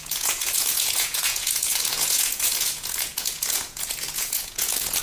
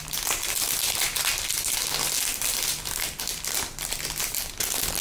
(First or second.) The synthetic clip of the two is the first